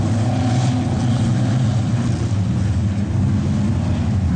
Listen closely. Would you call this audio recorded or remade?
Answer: recorded